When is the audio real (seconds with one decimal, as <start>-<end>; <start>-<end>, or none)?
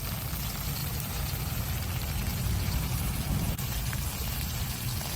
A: 0.0-0.8; 1.5-2.3